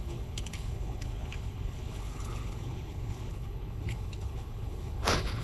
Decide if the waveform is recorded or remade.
remade